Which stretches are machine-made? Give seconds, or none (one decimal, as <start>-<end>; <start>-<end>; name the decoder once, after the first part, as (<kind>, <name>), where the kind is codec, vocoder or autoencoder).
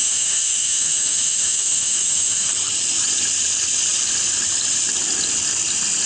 0.0-2.5 (autoencoder, DAC-VAE)